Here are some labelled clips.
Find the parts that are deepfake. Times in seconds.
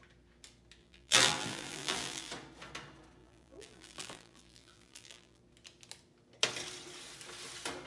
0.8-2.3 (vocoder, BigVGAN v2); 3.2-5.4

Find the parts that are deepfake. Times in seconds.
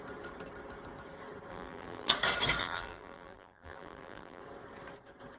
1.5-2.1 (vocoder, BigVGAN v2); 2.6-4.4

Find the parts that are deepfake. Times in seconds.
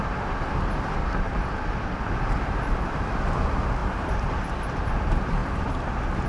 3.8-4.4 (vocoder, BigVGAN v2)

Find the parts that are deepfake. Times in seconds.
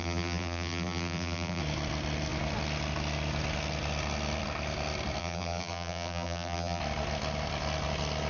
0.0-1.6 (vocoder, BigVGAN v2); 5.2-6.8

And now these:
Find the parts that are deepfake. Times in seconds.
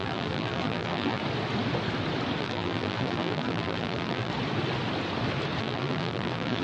0.0-1.2 (vocoder, BigVGAN v2); 2.4-4.3; 5.6-6.6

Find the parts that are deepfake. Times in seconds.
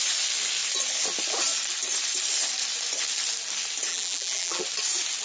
3.9-4.6 (vocoder, BigVGAN v2)